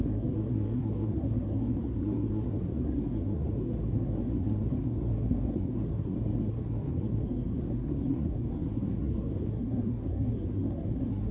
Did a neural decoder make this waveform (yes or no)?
yes